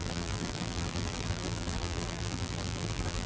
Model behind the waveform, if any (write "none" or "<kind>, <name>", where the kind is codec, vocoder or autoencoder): vocoder, BigVGAN v2